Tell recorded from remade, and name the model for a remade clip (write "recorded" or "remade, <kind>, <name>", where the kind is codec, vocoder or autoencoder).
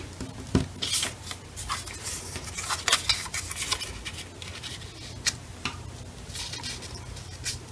recorded